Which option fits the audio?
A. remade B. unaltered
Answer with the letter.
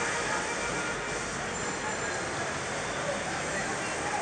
B